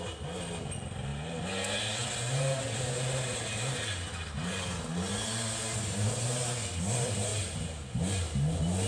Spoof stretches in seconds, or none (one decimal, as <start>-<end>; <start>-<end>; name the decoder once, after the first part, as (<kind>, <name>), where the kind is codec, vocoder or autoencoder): none